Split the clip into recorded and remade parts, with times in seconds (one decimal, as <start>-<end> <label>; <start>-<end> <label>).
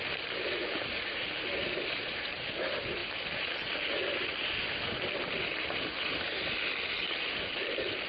0.0-8.1 recorded